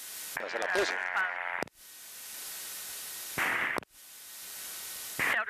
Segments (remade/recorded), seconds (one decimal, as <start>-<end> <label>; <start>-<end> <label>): 0.0-5.5 recorded